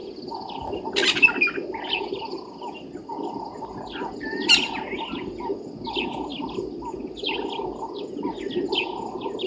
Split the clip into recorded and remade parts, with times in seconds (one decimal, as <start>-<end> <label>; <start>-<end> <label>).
0.0-9.5 recorded